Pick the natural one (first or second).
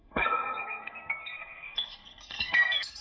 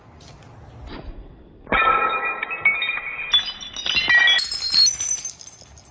second